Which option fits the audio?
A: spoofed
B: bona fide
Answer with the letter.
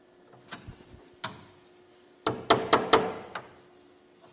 B